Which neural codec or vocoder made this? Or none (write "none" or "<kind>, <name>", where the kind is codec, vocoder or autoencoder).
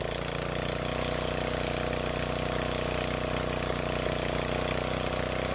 none